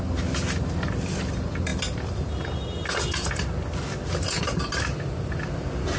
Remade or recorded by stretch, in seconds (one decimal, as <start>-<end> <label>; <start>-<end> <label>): 0.0-6.0 recorded

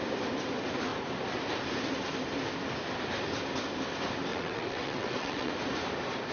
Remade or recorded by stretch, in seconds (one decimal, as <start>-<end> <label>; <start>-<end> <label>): 0.0-4.3 recorded; 4.3-5.5 remade; 5.5-6.3 recorded

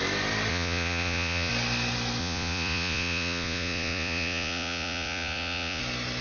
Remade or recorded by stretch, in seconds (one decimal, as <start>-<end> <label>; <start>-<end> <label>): 0.0-0.5 recorded; 0.5-1.5 remade; 1.5-2.2 recorded; 2.2-5.8 remade; 5.8-6.2 recorded

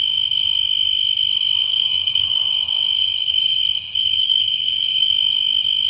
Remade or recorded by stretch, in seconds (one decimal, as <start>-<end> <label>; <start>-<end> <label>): 0.0-1.6 recorded; 1.6-2.5 remade; 2.5-3.0 recorded; 3.0-3.6 remade; 3.6-4.0 recorded; 4.0-5.1 remade; 5.1-5.9 recorded

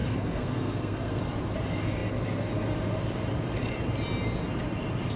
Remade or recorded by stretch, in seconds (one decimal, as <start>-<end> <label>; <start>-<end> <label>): 0.0-1.2 remade; 1.2-5.2 recorded

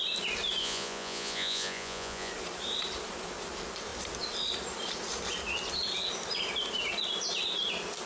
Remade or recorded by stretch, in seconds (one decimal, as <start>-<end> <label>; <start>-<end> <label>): 0.0-0.6 recorded; 0.6-2.3 remade; 2.3-8.1 recorded

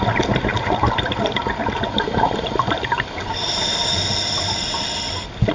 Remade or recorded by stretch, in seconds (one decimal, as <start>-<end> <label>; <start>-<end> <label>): 0.0-5.5 recorded